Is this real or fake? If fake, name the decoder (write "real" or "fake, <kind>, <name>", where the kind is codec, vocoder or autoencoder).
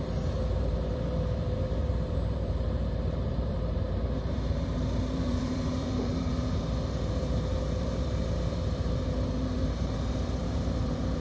fake, vocoder, BigVGAN v2